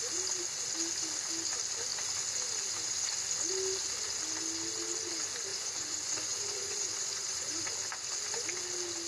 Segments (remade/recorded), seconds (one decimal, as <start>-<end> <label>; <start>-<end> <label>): 0.0-5.5 recorded; 5.5-7.7 remade; 7.7-9.1 recorded